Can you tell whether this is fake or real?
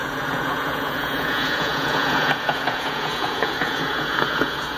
fake